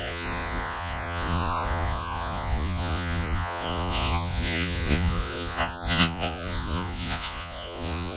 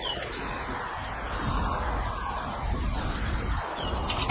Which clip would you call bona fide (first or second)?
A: second